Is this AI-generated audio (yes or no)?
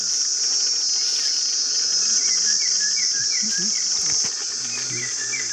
no